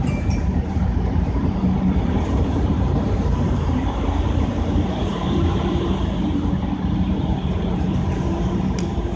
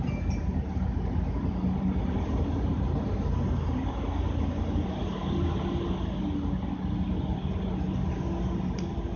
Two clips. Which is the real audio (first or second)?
second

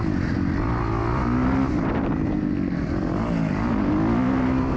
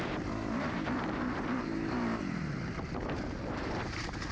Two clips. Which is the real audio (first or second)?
first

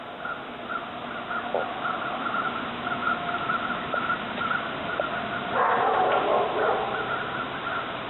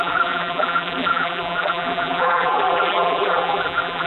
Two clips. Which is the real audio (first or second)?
first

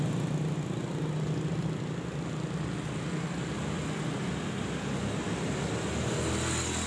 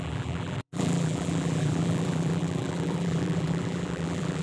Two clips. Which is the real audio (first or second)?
first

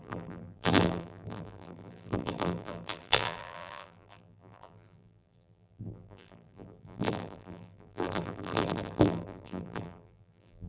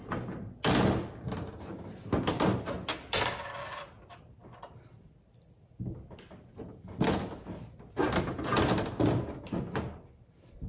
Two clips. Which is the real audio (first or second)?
second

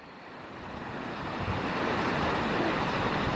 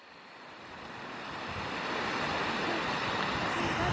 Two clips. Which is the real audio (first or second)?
second